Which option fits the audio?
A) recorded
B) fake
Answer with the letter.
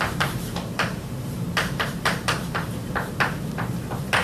B